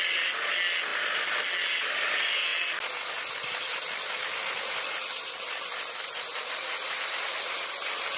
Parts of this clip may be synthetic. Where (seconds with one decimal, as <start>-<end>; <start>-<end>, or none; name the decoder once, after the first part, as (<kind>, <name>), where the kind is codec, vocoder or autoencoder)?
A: none